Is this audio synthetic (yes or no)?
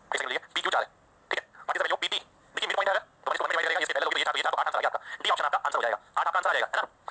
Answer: no